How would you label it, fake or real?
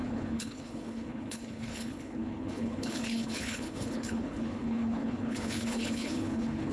fake